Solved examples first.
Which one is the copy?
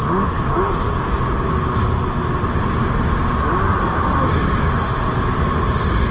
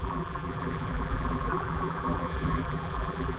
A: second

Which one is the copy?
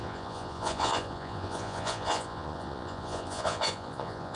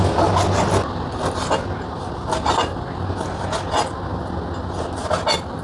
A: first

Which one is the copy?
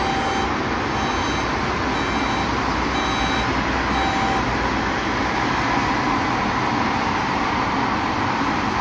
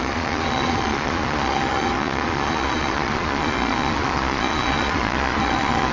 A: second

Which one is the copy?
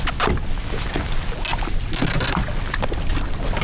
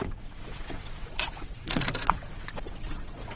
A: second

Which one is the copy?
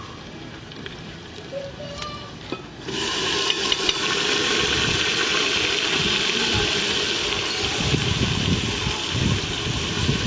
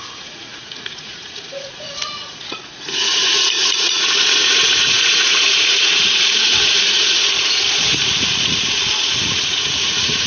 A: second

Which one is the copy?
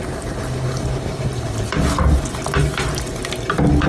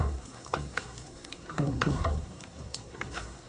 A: second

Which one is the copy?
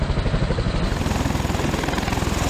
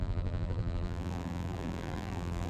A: second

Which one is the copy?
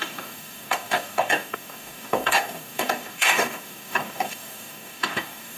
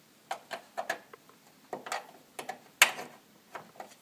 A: first